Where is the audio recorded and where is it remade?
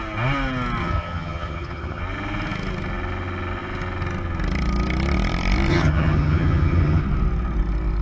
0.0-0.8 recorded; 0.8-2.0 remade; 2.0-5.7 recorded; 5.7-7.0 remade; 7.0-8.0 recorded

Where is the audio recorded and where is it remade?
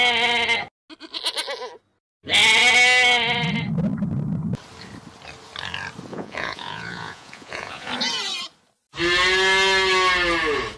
0.0-6.1 recorded; 6.1-7.9 remade; 7.9-10.8 recorded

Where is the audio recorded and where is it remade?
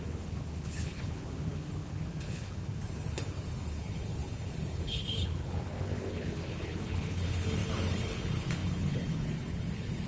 0.0-10.1 remade